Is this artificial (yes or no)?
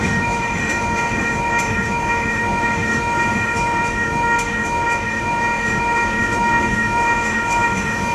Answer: yes